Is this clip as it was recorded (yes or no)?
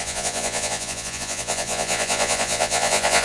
no